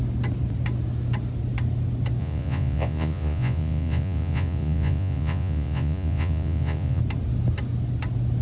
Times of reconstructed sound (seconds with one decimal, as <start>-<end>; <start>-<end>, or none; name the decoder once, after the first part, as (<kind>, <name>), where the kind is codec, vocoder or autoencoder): 2.2-7.0 (vocoder, Vocos)

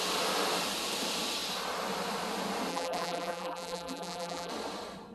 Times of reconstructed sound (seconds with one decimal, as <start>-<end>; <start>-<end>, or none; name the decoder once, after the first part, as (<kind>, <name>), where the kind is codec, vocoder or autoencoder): 2.7-4.5 (vocoder, BigVGAN v2)